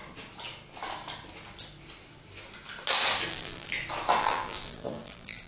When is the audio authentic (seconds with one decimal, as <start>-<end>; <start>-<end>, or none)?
0.0-3.3; 3.7-4.2